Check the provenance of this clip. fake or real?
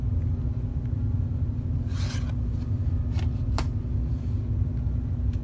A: real